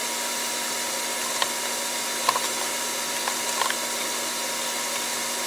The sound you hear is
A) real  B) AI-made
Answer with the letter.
A